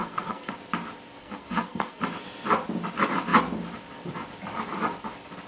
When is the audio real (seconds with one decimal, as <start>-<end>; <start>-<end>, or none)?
0.5-1.2; 2.0-5.5